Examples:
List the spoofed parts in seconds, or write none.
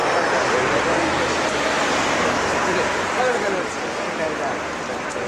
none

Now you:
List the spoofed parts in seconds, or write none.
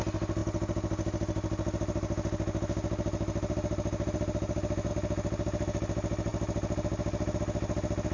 none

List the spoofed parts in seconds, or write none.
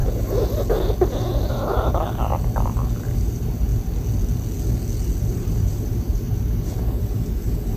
1.5-2.3 (vocoder, BigVGAN v2); 3.0-3.7; 5.2-7.8